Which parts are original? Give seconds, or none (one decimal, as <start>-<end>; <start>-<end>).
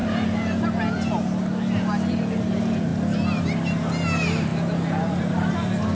0.0-5.9